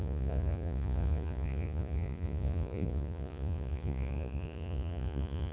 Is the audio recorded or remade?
remade